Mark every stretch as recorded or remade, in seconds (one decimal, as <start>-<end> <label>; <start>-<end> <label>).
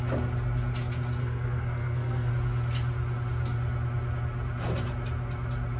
0.0-1.2 recorded; 1.2-2.3 remade; 2.3-5.8 recorded